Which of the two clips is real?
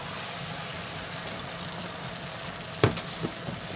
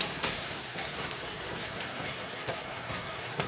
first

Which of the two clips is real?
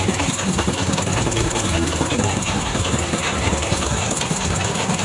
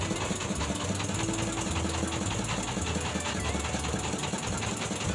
second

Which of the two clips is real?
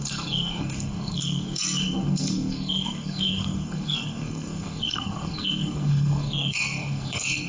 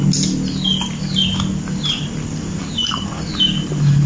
second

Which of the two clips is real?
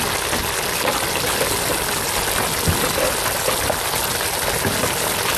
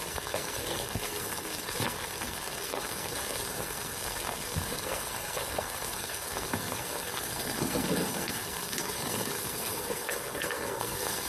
first